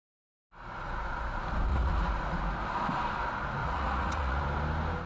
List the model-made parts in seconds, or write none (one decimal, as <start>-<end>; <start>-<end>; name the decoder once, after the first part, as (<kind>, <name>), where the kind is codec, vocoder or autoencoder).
1.7-2.4 (vocoder, Vocos); 3.6-4.4